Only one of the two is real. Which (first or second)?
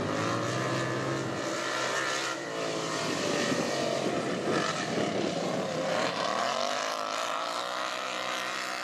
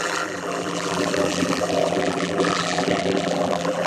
first